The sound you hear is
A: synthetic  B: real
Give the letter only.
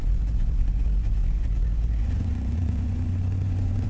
A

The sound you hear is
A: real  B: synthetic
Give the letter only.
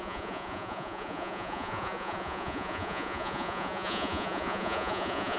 B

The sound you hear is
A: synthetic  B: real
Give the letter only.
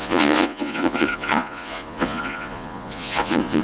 A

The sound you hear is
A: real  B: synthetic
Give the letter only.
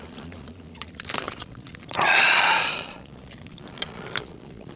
B